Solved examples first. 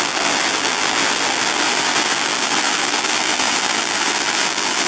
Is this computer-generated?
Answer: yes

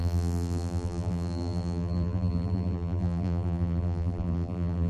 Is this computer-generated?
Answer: yes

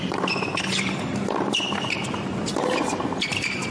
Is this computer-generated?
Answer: no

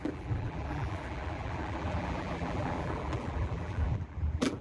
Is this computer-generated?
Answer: yes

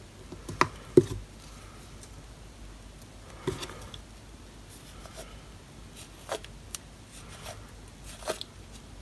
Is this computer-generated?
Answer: no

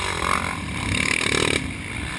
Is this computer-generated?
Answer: yes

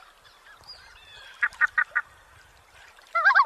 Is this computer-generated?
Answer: yes